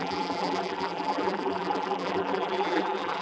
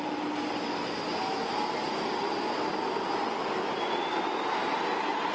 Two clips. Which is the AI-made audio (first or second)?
first